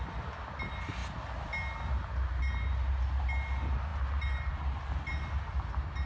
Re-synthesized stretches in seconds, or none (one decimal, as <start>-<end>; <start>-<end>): none